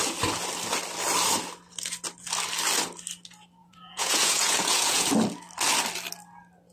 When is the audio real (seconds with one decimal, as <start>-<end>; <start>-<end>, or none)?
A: 0.0-3.6; 5.1-6.7